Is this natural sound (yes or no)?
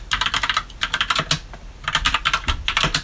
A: yes